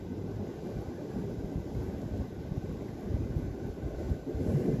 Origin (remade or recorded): recorded